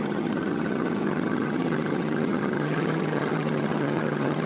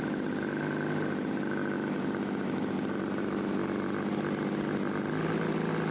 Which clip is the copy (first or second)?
first